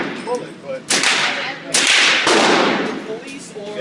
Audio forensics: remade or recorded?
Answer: recorded